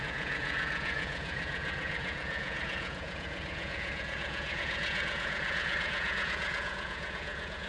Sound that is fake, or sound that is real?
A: fake